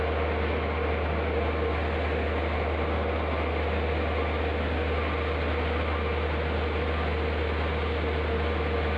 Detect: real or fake real